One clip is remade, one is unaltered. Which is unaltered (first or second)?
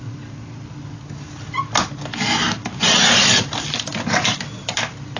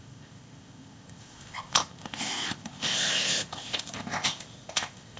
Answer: first